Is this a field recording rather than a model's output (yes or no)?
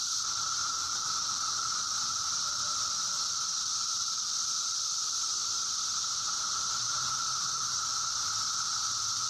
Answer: no